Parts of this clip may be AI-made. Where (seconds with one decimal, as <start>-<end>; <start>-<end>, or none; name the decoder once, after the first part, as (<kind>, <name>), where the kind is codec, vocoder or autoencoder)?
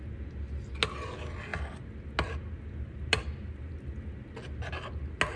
none